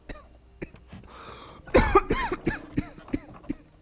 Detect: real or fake real